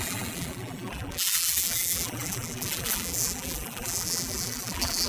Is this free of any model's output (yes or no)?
no